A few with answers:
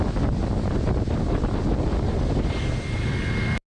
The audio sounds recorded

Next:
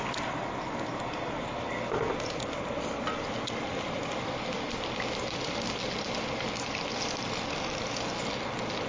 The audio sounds recorded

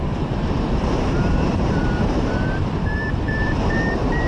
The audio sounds remade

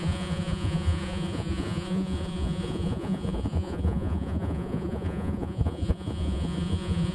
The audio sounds remade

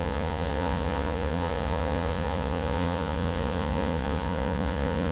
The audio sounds remade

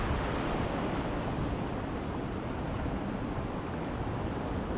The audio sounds recorded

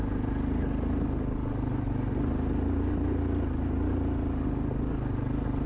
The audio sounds recorded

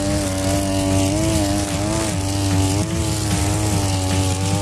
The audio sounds recorded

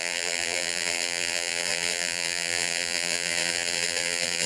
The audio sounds remade